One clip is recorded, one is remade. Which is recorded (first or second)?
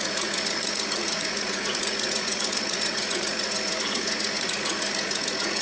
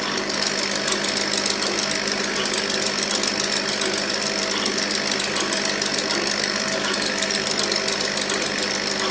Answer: second